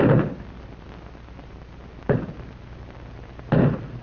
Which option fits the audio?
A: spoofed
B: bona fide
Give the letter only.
B